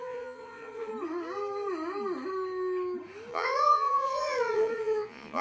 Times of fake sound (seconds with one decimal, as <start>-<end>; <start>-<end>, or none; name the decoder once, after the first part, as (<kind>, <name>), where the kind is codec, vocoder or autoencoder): 0.0-0.9 (vocoder, Vocos); 3.3-5.4

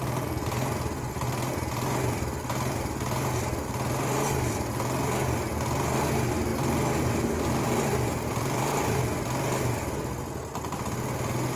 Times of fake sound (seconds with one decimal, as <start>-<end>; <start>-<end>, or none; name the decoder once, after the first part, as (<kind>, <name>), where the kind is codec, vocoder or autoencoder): 6.5-9.0 (vocoder, BigVGAN v2)

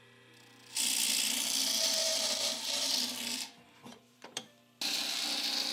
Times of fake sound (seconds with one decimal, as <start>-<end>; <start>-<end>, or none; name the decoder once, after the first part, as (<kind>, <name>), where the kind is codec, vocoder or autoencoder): 2.0-2.9 (vocoder, BigVGAN v2); 3.9-4.4